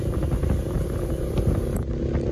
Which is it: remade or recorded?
recorded